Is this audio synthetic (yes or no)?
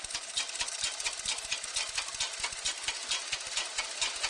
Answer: no